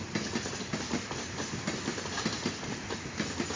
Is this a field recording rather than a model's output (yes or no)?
yes